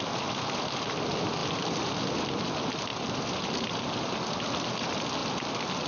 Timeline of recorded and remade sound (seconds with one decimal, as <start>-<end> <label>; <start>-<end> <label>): 0.0-1.4 recorded; 1.4-2.5 remade; 2.5-2.9 recorded; 2.9-3.9 remade; 3.9-5.2 recorded; 5.2-5.9 remade